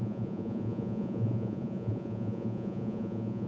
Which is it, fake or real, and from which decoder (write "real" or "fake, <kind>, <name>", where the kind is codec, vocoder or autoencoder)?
fake, vocoder, Vocos